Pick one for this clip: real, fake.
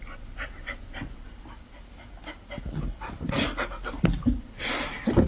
real